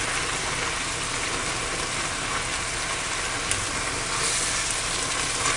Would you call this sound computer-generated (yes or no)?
no